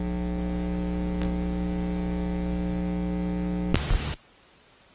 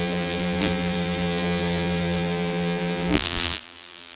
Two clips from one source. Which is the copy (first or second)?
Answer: second